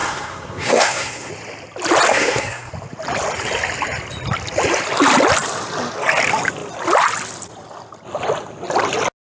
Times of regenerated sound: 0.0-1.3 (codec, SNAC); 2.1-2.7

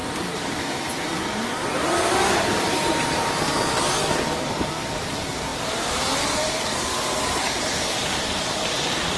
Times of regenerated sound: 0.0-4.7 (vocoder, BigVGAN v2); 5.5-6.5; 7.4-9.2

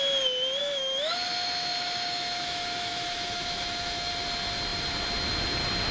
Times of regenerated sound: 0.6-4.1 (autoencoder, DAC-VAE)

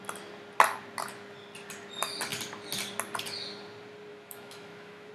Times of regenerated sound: 4.1-5.1 (autoencoder, DAC-VAE)

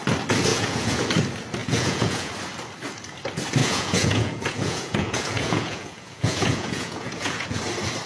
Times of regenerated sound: 0.5-1.0 (vocoder, Vocos); 1.6-2.3; 3.6-7.6

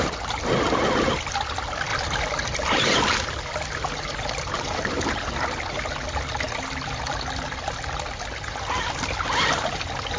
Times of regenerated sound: none